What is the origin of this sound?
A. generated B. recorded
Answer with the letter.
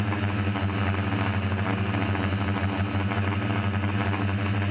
B